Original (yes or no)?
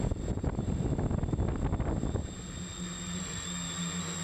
yes